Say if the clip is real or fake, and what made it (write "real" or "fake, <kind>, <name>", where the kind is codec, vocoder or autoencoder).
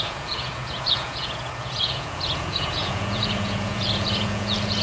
fake, vocoder, Vocos